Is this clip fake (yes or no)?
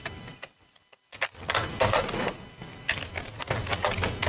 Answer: no